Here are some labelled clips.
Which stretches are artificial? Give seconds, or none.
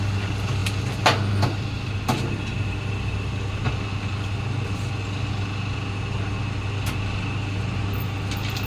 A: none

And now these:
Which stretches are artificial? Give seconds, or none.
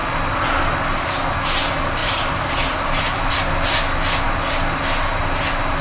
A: 2.0-3.3 (vocoder, BigVGAN v2)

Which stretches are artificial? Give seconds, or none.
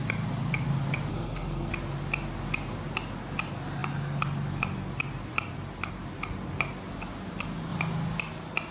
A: 1.1-1.7 (codec, SNAC)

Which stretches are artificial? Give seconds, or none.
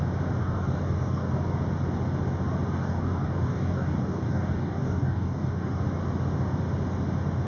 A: 0.4-1.3 (codec, DAC); 2.8-5.8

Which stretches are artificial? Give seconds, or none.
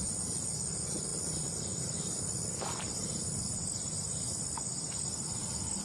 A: none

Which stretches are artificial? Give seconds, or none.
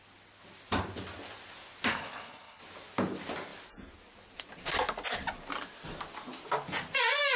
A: 1.9-2.6 (codec, HILCodec)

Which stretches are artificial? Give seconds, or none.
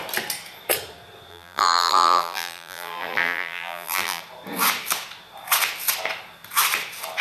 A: 1.3-4.2 (vocoder, BigVGAN v2)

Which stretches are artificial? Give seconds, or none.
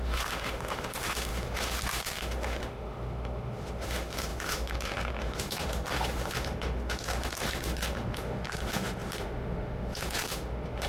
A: 0.0-10.9 (autoencoder, DAC-VAE)